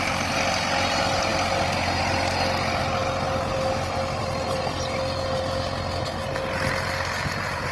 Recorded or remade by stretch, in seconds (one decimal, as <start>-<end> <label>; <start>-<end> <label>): 0.0-7.7 recorded

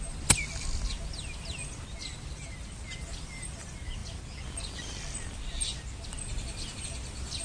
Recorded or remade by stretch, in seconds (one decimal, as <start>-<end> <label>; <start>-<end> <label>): 0.0-7.4 recorded

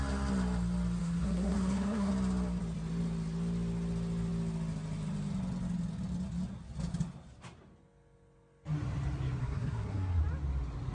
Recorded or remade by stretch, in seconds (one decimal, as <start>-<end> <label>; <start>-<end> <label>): 0.0-1.0 recorded; 1.0-2.1 remade; 2.1-9.4 recorded; 9.4-10.2 remade; 10.2-10.9 recorded

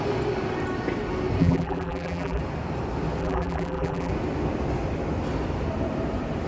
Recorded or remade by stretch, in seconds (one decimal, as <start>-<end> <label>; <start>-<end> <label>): 0.0-1.4 recorded; 1.4-2.4 remade; 2.4-3.2 recorded; 3.2-4.1 remade; 4.1-6.5 recorded

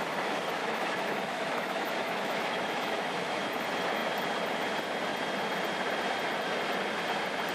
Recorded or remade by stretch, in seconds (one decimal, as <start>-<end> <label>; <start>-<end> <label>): 0.0-0.6 recorded; 0.6-3.5 remade; 3.5-7.5 recorded

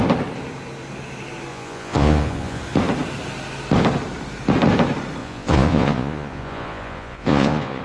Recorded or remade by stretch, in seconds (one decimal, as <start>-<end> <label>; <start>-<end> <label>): 0.0-1.5 recorded; 1.5-2.6 remade; 2.6-5.2 recorded; 5.2-7.8 remade

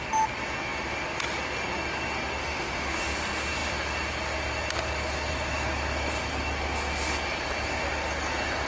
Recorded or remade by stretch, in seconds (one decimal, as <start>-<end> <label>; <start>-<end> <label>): 0.0-2.4 recorded; 2.4-3.0 remade; 3.0-8.7 recorded